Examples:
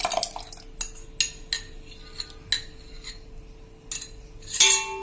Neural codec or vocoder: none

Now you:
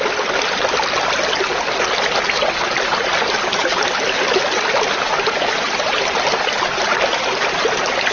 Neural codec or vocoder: none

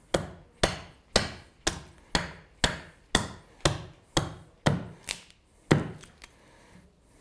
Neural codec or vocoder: none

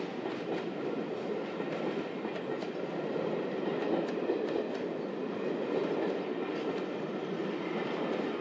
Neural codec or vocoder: none